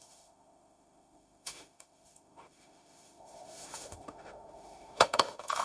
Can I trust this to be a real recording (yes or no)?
no